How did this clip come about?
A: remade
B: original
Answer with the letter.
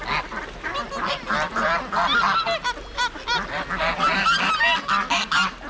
B